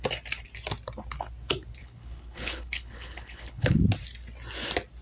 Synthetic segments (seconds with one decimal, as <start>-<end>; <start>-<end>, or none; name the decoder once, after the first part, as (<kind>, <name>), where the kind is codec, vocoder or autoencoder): 1.8-3.9 (codec, HILCodec)